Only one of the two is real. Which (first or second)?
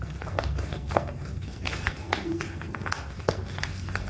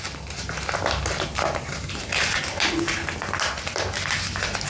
second